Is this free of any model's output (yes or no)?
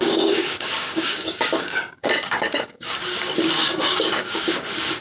no